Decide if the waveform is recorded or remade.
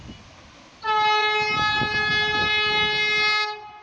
recorded